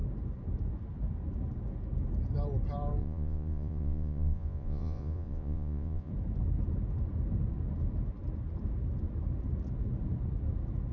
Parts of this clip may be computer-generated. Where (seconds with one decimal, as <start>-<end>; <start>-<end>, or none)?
3.0-6.1